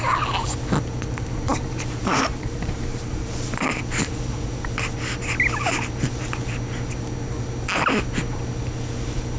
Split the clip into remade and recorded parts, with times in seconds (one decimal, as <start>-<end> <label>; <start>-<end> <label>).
0.0-1.5 recorded; 1.5-3.3 remade; 3.3-9.4 recorded